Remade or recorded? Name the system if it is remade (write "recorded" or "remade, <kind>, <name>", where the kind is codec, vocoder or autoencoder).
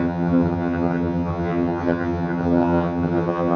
remade, vocoder, HiFi-GAN